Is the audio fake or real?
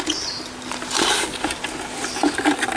real